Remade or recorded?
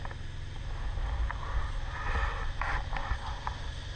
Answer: recorded